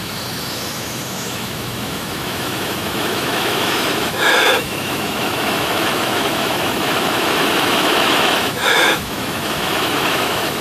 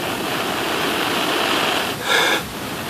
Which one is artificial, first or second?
first